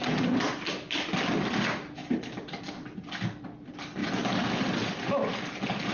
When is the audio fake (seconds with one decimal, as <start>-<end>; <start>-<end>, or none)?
none